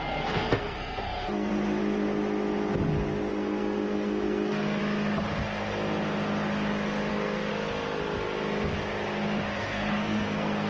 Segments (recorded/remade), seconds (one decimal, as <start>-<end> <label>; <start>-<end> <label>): 0.0-1.5 remade; 1.5-3.3 recorded; 3.3-4.8 remade; 4.8-7.1 recorded; 7.1-7.5 remade; 7.5-9.6 recorded; 9.6-10.7 remade